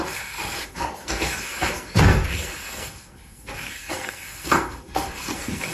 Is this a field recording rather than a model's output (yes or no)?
no